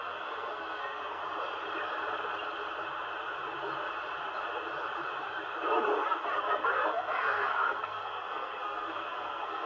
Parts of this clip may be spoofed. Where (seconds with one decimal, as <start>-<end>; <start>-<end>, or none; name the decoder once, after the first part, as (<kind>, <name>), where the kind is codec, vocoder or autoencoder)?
0.0-1.2 (codec, SNAC); 6.4-9.7